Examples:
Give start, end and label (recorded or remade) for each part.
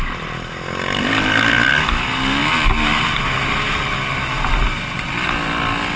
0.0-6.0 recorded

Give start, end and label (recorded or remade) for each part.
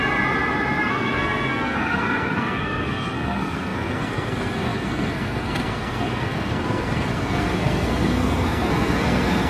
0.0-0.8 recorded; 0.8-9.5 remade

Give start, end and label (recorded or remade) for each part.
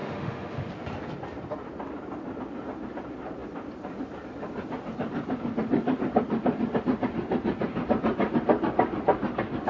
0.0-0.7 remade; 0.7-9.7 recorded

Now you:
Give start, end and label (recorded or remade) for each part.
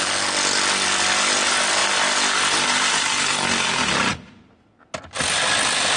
0.0-6.0 recorded